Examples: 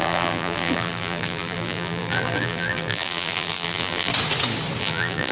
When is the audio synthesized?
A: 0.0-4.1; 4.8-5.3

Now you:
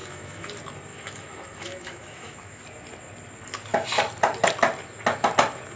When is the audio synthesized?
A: 0.0-0.5; 0.9-2.6

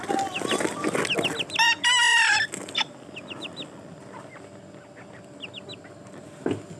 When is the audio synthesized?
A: none

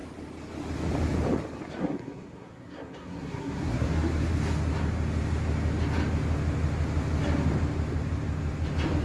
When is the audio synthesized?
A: 1.8-4.3

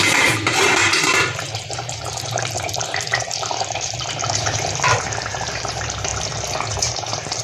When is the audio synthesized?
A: 0.0-6.1; 6.8-7.4

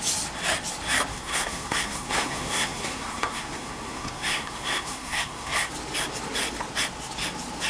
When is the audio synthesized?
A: 1.1-5.7

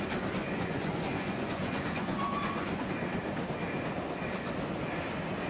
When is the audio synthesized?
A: 0.4-2.9

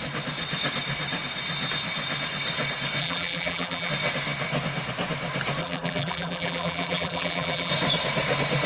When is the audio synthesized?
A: 3.0-3.9; 5.6-7.7